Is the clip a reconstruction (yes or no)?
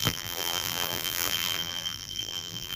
yes